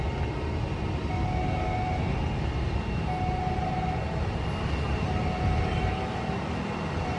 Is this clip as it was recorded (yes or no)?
yes